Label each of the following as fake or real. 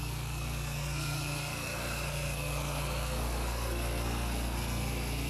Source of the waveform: fake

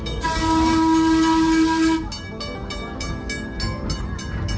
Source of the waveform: real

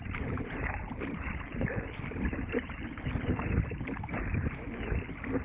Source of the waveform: real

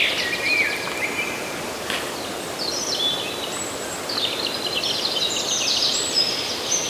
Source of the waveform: real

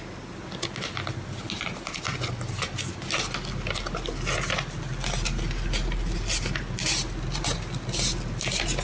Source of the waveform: real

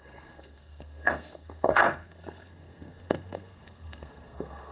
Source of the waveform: fake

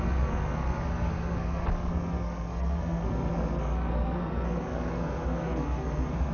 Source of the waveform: fake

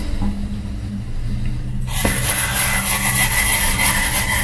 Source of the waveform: real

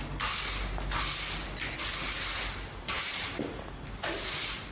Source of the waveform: real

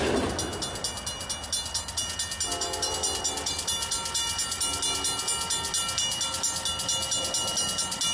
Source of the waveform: real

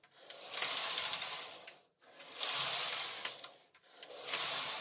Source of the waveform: real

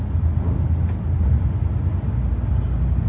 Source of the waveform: real